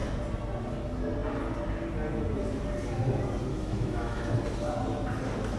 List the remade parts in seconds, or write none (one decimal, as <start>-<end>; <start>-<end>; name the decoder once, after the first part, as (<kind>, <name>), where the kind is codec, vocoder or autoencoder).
3.5-4.2 (autoencoder, DAC-VAE)